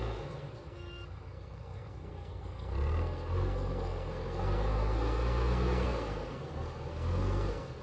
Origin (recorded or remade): remade